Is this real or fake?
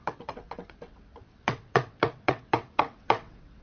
fake